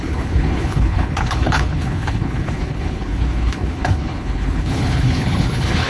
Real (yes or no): no